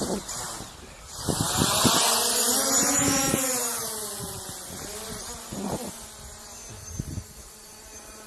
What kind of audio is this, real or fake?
real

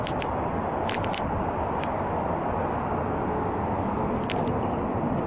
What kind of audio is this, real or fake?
real